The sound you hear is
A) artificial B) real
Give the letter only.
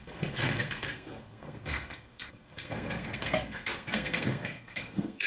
A